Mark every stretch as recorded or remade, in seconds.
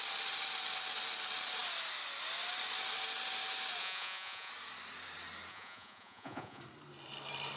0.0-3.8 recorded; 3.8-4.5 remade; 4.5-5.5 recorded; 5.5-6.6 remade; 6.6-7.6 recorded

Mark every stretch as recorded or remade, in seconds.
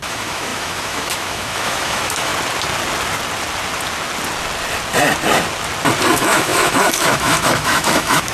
0.0-2.3 remade; 2.3-6.1 recorded; 6.1-8.3 remade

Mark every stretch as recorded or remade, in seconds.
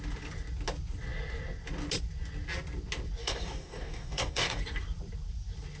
0.0-3.2 recorded; 3.2-4.6 remade; 4.6-5.8 recorded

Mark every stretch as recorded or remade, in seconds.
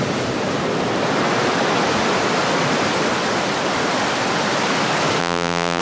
0.0-5.2 recorded; 5.2-5.8 remade